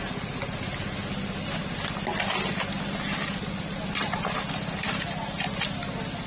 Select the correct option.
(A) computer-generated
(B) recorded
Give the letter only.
B